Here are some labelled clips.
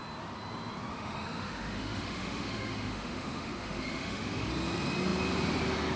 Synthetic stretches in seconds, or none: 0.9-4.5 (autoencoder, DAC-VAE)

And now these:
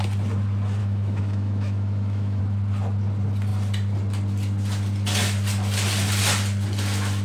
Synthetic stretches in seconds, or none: 0.8-2.4 (autoencoder, DAC-VAE)